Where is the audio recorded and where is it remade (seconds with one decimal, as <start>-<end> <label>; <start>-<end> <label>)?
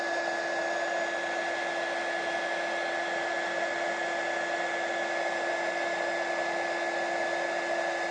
0.0-8.1 recorded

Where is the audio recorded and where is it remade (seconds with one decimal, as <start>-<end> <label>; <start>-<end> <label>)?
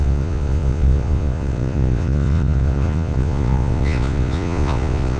0.0-5.2 remade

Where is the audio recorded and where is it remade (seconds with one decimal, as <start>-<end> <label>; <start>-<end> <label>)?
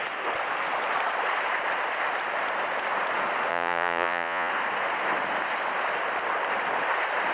0.0-3.5 recorded; 3.5-4.5 remade; 4.5-7.3 recorded